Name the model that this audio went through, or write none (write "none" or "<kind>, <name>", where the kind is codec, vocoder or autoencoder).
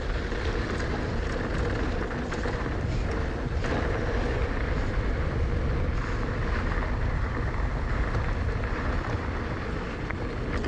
none